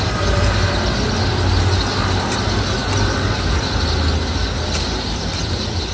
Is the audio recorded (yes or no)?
yes